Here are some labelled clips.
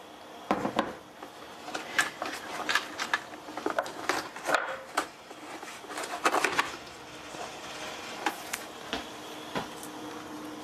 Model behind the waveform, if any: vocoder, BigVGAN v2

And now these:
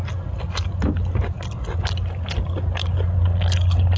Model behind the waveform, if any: none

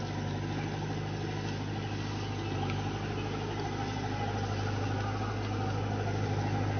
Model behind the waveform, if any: none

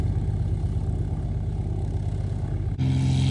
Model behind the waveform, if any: none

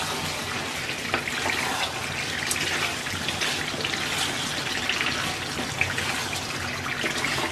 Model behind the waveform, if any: none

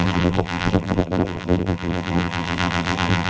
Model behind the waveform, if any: vocoder, BigVGAN v2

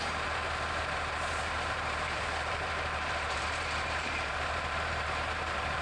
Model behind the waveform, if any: vocoder, BigVGAN v2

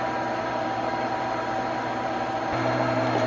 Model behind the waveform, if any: vocoder, BigVGAN v2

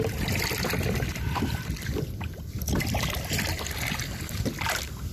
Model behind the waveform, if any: vocoder, BigVGAN v2